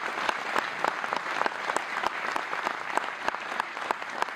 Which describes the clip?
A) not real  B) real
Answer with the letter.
B